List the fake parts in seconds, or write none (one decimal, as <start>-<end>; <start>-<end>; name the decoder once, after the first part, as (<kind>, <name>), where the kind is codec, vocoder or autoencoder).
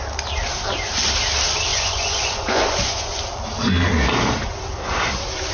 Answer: 1.7-3.2 (vocoder, Vocos)